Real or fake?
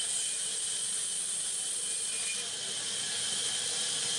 real